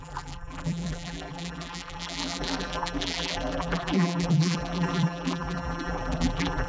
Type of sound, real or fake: fake